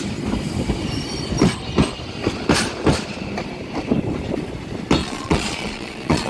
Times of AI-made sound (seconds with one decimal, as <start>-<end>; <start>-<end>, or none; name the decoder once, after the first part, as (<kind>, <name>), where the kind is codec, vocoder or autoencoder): 5.0-6.3 (vocoder, Vocos)